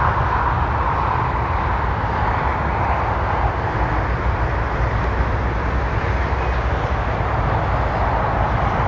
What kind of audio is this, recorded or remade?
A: recorded